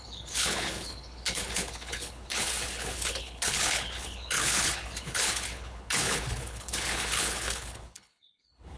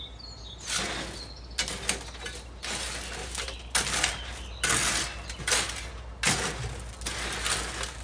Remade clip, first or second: first